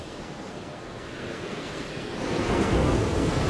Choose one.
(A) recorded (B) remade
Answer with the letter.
B